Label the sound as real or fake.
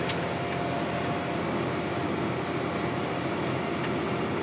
real